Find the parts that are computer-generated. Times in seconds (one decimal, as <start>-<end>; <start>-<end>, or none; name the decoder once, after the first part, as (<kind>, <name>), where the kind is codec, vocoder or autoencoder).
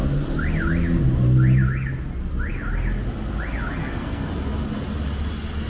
3.8-4.3 (codec, SNAC)